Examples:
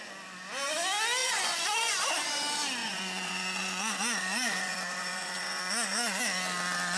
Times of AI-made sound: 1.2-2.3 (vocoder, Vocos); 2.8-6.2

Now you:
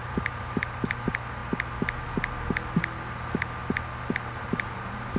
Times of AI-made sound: 0.0-1.4 (vocoder, BigVGAN v2); 4.4-5.2

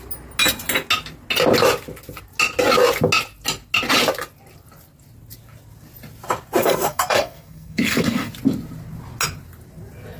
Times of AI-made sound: 6.6-8.3 (codec, SNAC)